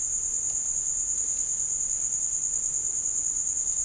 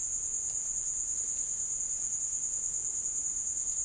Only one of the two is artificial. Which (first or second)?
second